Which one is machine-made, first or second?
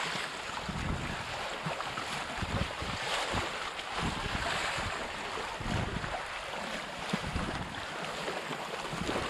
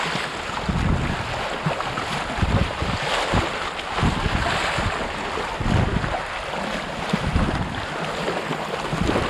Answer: first